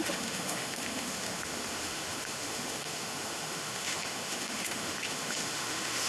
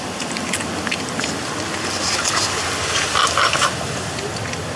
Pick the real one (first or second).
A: second